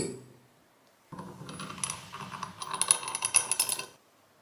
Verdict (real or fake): real